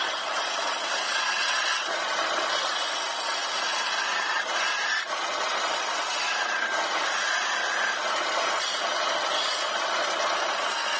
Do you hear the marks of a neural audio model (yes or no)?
no